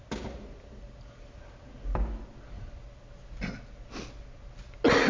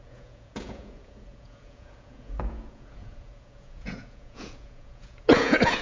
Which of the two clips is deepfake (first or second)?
second